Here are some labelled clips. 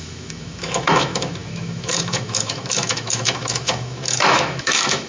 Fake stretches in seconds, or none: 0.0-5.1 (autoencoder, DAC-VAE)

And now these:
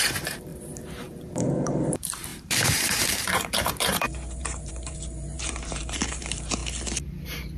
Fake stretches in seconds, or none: 0.0-6.6 (vocoder, BigVGAN v2)

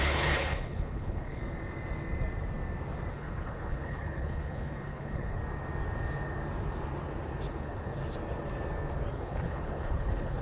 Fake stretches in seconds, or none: 0.0-1.4 (codec, HILCodec); 3.1-5.4; 7.5-8.0; 9.1-10.4

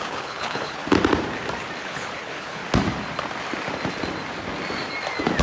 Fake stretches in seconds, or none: 0.0-0.8 (codec, HILCodec); 1.8-2.6

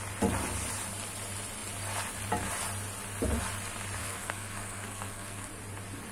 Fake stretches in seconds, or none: 4.0-5.5 (codec, SNAC)

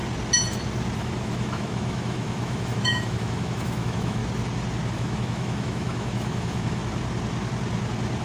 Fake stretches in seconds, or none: 1.0-4.2 (autoencoder, DAC-VAE); 4.9-6.8